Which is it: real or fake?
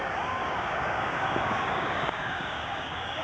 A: fake